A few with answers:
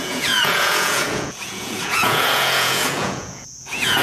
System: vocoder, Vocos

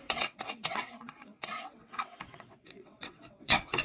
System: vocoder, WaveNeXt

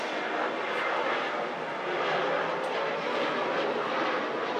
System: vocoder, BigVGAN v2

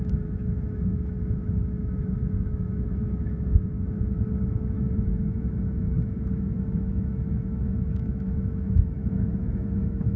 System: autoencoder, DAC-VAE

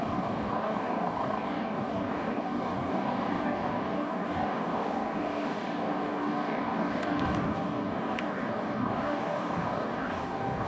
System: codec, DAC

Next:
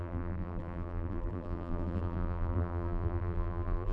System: vocoder, BigVGAN v2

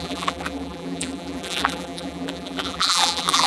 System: vocoder, BigVGAN v2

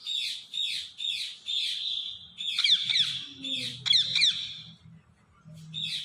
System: none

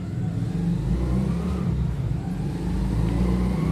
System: none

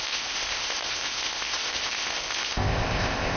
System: codec, ZipCodec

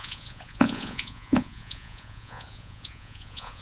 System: vocoder, Vocos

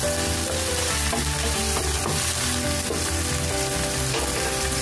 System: none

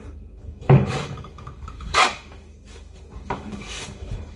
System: codec, DAC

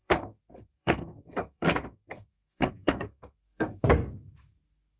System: codec, SNAC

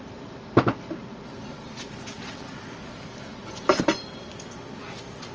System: none